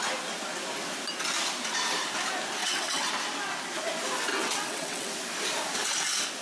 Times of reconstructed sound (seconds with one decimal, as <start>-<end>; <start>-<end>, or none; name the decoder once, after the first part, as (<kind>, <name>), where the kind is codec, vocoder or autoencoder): 2.6-3.1 (vocoder, WaveNeXt); 4.3-5.1